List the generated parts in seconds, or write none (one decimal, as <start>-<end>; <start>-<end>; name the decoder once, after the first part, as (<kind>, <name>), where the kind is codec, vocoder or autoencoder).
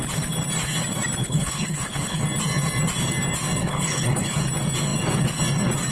1.2-2.2 (codec, HILCodec); 3.6-4.4